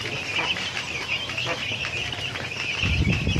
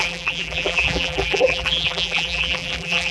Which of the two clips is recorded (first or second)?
first